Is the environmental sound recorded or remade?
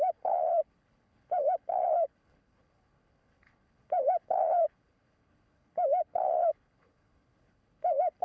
remade